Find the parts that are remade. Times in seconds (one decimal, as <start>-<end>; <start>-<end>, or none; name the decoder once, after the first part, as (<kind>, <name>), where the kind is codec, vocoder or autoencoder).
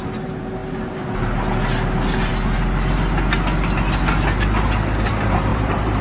5.5-6.0 (vocoder, BigVGAN v2)